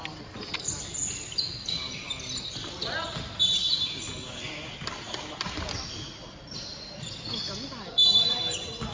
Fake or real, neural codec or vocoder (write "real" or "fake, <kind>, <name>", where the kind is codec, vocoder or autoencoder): real